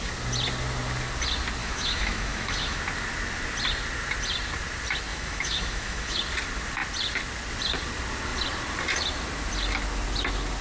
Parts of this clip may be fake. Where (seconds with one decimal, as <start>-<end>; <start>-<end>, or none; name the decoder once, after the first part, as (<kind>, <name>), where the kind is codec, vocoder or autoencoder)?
1.6-2.8 (autoencoder, DAC-VAE); 5.1-6.2